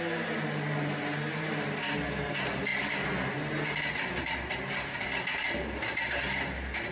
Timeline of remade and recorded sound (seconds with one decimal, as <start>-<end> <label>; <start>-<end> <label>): 0.0-6.9 recorded

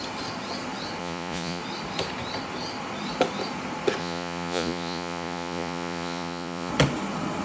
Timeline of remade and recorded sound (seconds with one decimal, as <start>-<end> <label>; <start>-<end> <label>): 0.0-1.0 recorded; 1.0-1.6 remade; 1.6-4.0 recorded; 4.0-6.7 remade; 6.7-7.4 recorded